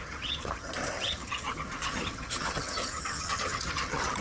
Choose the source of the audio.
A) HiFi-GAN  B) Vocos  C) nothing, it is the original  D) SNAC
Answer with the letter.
A